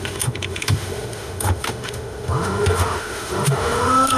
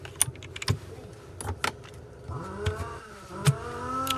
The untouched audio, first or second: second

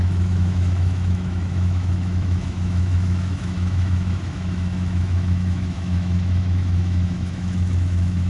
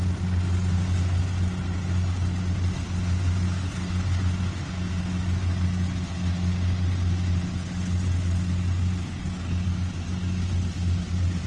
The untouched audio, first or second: second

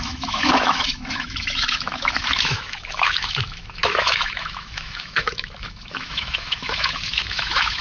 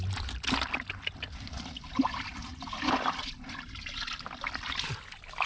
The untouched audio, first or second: second